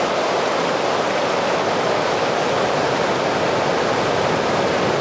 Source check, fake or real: real